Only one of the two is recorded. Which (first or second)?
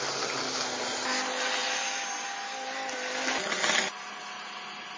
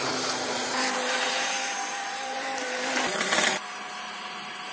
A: first